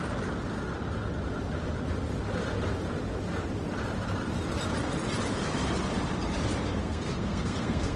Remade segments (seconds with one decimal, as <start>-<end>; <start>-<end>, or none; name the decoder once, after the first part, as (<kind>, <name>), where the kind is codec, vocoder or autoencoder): 6.8-8.0 (codec, SNAC)